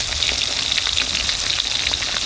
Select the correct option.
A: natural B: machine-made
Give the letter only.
A